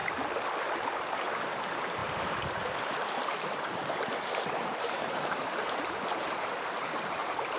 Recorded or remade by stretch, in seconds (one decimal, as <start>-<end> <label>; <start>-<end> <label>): 0.0-1.5 recorded; 1.5-7.6 remade